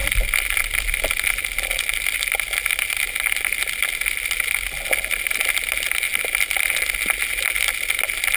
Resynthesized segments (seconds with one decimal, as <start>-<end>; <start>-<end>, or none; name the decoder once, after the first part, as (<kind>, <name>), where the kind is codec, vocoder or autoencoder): none